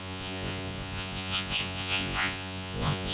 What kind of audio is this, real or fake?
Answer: fake